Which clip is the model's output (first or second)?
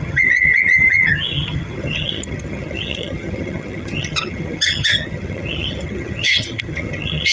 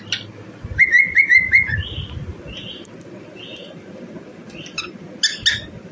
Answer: first